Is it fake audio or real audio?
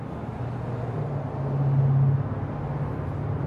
real